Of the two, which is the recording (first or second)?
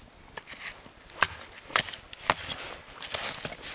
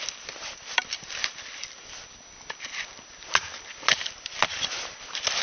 first